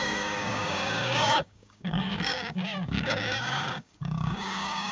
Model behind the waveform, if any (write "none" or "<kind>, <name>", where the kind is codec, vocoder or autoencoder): codec, DAC